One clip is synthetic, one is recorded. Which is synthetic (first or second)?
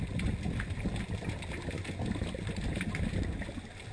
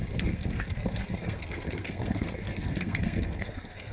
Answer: second